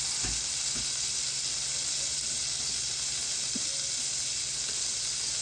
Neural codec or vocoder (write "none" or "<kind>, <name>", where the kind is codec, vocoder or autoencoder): none